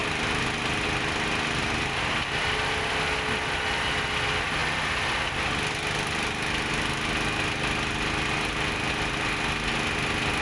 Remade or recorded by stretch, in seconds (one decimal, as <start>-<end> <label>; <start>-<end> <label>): 0.0-10.4 recorded